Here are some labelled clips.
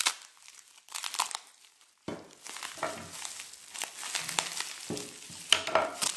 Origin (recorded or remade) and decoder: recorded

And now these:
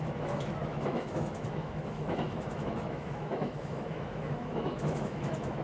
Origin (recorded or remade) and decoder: remade, autoencoder, DAC-VAE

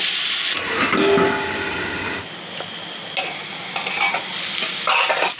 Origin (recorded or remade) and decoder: recorded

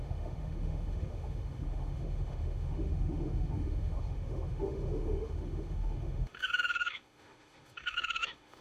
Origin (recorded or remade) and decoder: remade, autoencoder, DAC-VAE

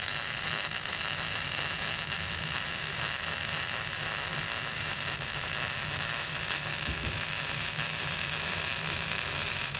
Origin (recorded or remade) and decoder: remade, autoencoder, DAC-VAE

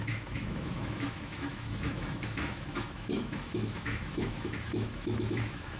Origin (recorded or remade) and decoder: remade, autoencoder, DAC-VAE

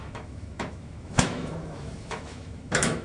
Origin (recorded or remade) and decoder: remade, autoencoder, DAC-VAE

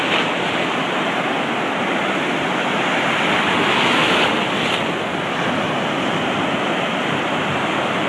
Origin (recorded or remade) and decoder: recorded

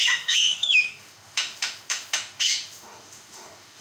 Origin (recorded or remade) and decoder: remade, autoencoder, DAC-VAE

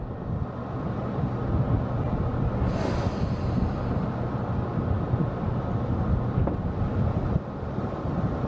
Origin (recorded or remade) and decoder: recorded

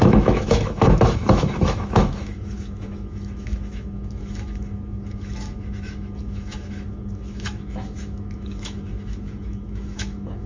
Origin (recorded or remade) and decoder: remade, autoencoder, DAC-VAE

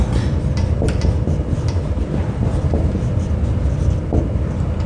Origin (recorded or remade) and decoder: recorded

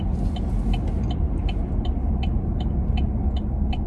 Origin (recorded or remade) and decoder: recorded